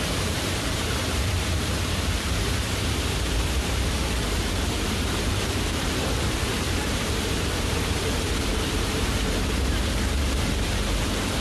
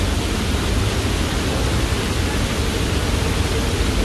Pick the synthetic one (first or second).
first